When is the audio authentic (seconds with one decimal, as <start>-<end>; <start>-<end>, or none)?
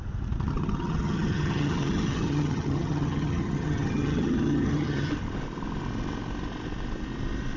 0.0-0.5; 5.1-7.6